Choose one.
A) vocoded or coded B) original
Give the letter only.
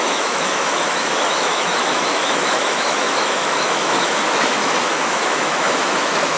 A